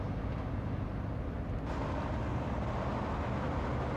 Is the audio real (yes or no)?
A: yes